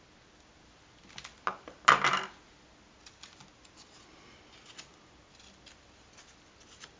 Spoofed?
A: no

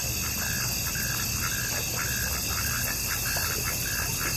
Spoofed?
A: no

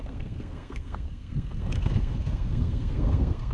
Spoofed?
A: yes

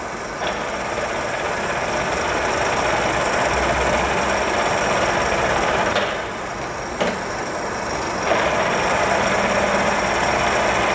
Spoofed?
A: no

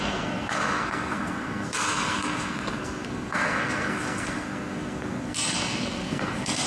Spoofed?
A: yes